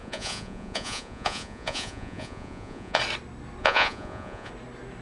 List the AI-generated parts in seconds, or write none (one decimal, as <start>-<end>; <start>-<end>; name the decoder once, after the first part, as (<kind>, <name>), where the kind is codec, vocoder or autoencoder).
0.0-3.0 (vocoder, Vocos); 3.6-4.5